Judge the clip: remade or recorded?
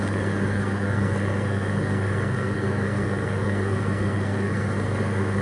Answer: remade